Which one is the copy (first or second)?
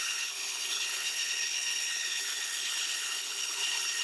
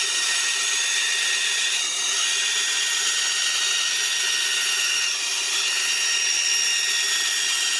first